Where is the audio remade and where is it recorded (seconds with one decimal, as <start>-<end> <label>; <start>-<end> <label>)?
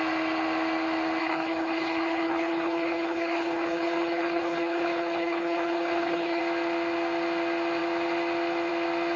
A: 0.0-1.2 recorded; 1.2-6.4 remade; 6.4-9.2 recorded